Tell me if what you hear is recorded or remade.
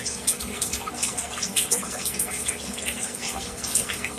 remade